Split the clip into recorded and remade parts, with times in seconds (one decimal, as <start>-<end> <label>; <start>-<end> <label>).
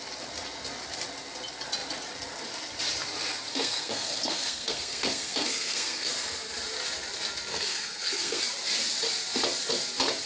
0.0-3.5 recorded; 3.5-6.1 remade; 6.1-7.5 recorded; 7.5-8.4 remade; 8.4-10.3 recorded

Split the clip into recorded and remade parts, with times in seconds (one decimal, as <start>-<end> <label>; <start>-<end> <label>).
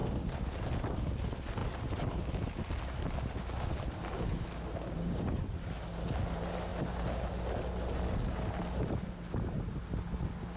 0.0-10.6 recorded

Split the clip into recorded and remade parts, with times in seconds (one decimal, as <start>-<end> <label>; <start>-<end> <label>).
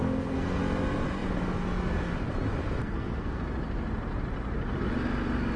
0.0-0.6 remade; 0.6-2.8 recorded; 2.8-3.4 remade; 3.4-5.6 recorded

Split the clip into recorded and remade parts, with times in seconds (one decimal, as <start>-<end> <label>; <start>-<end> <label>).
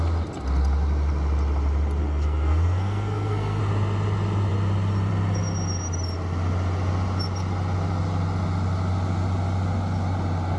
0.0-2.0 recorded; 2.0-3.6 remade; 3.6-10.6 recorded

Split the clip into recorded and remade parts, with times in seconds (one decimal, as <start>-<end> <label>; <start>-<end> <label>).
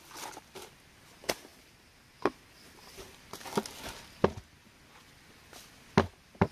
0.0-6.5 recorded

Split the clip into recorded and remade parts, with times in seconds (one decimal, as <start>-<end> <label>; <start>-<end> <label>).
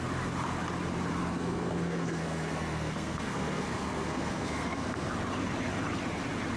0.0-1.3 recorded; 1.3-5.1 remade; 5.1-6.6 recorded